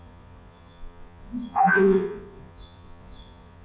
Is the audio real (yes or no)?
no